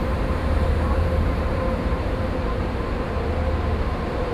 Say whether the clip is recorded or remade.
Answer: remade